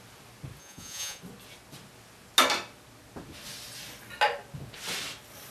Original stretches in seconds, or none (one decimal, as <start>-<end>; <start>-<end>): 0.0-0.6; 1.2-5.5